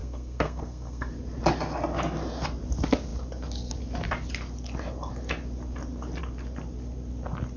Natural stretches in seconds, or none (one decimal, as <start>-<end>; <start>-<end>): 1.1-7.6